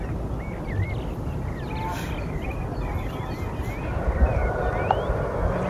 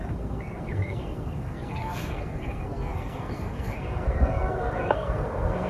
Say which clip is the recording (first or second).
first